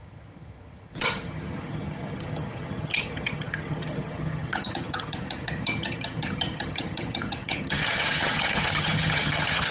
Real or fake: fake